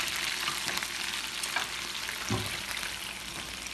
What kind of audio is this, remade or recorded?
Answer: recorded